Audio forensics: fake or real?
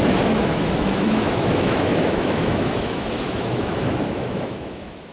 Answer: fake